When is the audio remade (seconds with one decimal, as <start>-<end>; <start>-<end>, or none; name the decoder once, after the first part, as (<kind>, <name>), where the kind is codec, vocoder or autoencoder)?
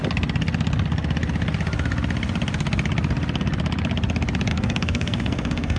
4.5-5.8 (codec, SNAC)